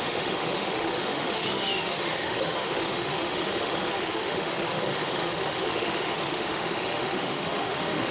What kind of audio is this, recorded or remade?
remade